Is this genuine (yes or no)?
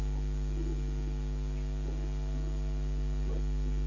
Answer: yes